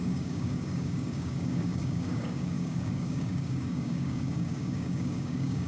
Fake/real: fake